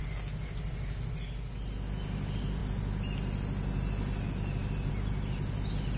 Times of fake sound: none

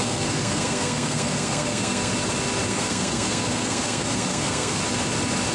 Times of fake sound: 0.0-2.1 (codec, SNAC); 2.7-4.8

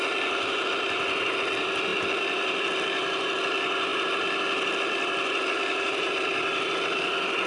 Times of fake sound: 1.9-2.8 (vocoder, BigVGAN v2); 3.9-7.5

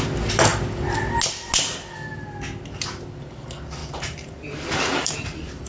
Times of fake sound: 3.8-5.7 (vocoder, BigVGAN v2)